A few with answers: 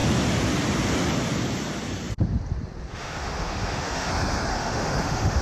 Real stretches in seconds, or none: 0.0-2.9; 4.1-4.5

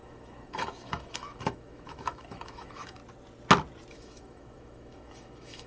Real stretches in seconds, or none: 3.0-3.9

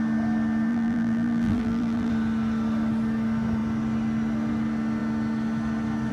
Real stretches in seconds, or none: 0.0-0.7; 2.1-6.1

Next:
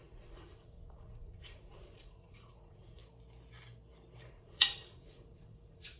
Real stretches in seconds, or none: 3.0-4.3

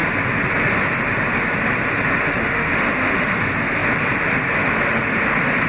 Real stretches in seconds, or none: 0.0-2.4; 3.4-5.7

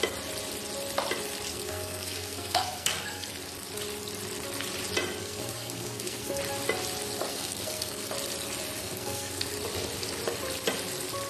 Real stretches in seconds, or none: 0.0-1.5; 3.3-5.2; 6.4-7.3; 8.1-8.8; 9.5-11.3